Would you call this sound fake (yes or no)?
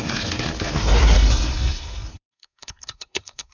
yes